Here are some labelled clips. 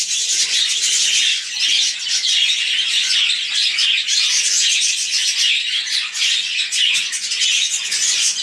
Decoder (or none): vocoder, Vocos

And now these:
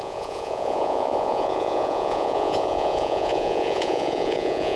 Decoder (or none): vocoder, Vocos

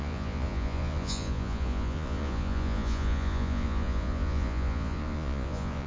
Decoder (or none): vocoder, Vocos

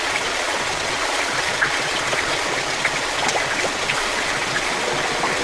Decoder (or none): vocoder, Vocos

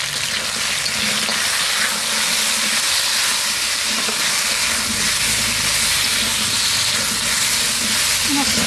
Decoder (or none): none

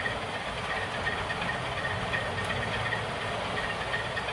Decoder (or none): none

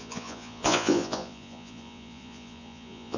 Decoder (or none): vocoder, Vocos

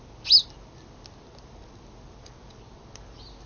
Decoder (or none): none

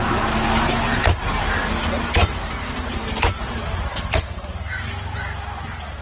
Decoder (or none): none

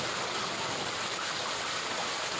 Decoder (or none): none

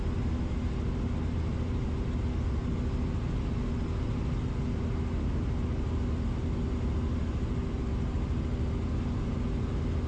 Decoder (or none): none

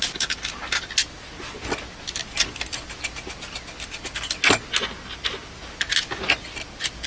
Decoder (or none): none